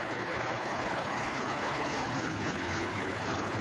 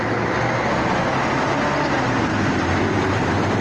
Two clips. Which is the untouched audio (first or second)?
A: second